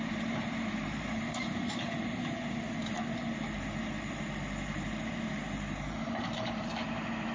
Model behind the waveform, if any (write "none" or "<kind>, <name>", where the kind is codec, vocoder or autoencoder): vocoder, BigVGAN v2